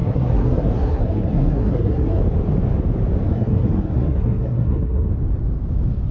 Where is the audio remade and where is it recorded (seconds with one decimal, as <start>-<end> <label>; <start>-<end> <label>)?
0.0-2.2 remade; 2.2-3.3 recorded; 3.3-5.1 remade; 5.1-6.1 recorded